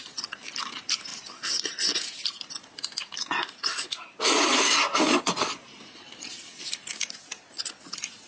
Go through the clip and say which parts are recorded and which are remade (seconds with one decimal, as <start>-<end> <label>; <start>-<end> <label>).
0.0-8.3 recorded